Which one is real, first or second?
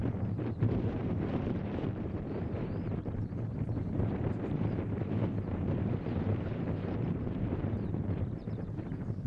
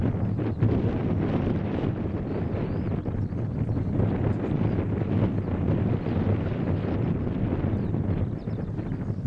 second